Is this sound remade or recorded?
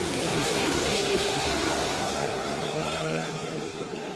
remade